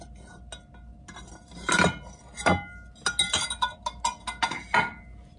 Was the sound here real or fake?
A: real